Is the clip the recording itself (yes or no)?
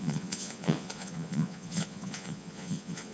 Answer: no